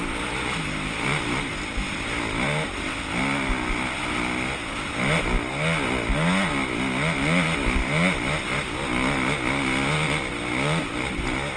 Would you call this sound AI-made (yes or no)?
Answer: no